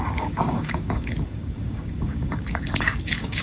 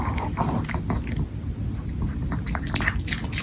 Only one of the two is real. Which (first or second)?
second